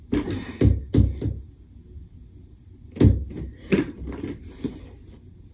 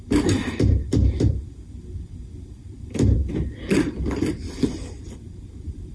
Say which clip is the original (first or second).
first